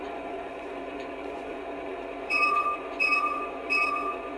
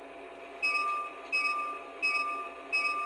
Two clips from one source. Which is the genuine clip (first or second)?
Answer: second